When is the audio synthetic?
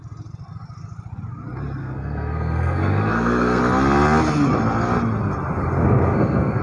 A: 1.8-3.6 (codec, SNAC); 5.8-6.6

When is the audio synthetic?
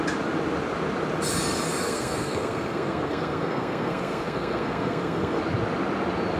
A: 1.8-5.4 (codec, SNAC)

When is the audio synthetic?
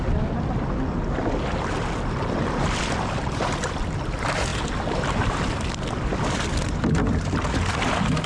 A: none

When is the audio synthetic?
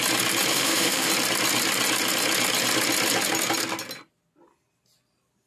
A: 0.5-1.1 (autoencoder, DAC-VAE)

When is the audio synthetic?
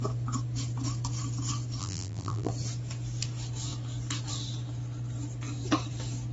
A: 1.8-2.5 (vocoder, BigVGAN v2)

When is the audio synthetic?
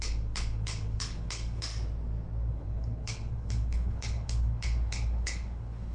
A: 0.0-1.7 (codec, HILCodec); 2.5-5.9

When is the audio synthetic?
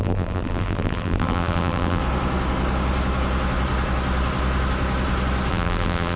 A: 0.0-2.0 (vocoder, BigVGAN v2); 5.5-6.2